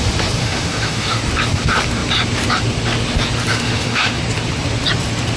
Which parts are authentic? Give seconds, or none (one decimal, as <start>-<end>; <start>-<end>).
0.0-0.4; 1.2-3.5; 4.2-5.4